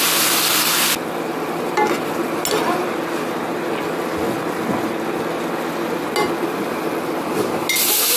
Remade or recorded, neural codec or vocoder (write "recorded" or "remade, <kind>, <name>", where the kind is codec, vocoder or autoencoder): recorded